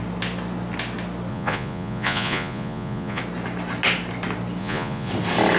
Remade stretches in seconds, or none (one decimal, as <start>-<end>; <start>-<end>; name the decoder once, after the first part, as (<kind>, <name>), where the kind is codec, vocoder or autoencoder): 1.3-3.2 (vocoder, Vocos); 4.6-5.1